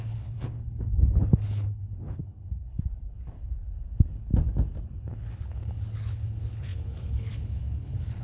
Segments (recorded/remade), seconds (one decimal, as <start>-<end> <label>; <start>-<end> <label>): 0.0-4.3 remade; 4.3-5.0 recorded; 5.0-8.2 remade